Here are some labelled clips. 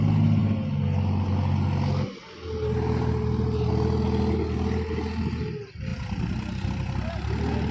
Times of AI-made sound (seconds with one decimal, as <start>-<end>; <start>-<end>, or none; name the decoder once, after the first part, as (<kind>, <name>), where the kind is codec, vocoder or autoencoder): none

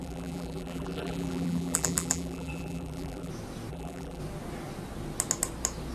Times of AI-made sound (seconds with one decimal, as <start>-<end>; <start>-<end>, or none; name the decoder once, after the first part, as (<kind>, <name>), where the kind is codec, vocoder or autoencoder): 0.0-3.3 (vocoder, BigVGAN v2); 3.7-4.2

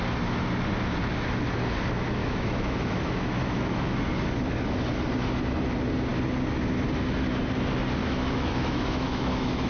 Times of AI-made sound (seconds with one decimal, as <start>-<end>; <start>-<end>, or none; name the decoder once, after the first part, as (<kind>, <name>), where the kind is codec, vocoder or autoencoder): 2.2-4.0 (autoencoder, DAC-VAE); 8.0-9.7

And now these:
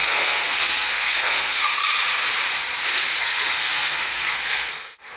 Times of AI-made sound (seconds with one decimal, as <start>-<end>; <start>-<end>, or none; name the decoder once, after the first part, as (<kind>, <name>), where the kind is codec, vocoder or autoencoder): 0.0-1.8 (codec, SNAC); 3.2-5.2